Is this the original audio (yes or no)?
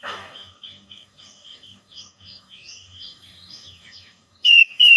no